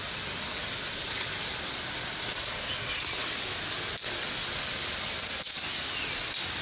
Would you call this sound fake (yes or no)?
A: no